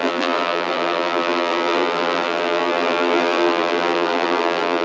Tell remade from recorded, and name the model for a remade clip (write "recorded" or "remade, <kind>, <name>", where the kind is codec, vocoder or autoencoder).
remade, vocoder, BigVGAN v2